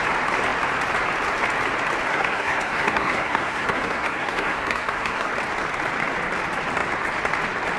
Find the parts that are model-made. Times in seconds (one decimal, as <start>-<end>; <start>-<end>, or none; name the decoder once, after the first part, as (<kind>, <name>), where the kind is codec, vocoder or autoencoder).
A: 2.1-5.3 (codec, SNAC)

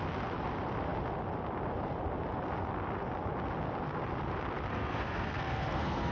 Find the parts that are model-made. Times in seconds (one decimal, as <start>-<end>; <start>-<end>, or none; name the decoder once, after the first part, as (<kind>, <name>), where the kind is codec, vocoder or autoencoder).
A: 4.7-6.1 (codec, SNAC)

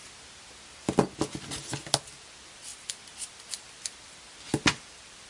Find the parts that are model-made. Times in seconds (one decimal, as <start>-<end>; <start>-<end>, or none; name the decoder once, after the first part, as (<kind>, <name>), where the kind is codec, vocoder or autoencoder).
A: none

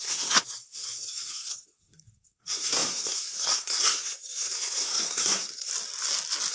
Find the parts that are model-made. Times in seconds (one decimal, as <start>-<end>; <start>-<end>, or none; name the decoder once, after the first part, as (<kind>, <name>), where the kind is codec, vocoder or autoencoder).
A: 0.0-5.7 (codec, SNAC)

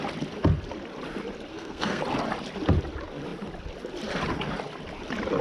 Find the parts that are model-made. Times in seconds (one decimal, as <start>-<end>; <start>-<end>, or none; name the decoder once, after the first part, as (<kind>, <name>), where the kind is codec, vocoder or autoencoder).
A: 1.5-2.0 (codec, SNAC)

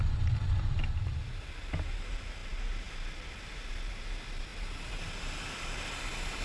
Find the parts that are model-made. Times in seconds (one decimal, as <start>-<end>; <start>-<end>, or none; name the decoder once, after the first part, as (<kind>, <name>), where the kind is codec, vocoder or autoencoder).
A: none

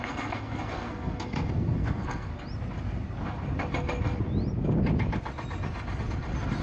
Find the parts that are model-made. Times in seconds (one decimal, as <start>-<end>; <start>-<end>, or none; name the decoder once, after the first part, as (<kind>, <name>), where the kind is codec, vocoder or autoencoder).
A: 0.0-2.3 (codec, SNAC)

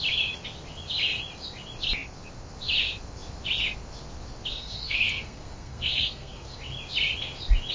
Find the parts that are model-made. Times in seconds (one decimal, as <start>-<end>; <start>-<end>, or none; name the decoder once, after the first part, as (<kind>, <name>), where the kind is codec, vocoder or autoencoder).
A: 4.5-6.6 (codec, SNAC)